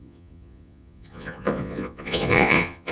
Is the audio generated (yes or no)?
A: yes